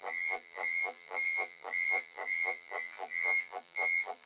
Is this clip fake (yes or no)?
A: yes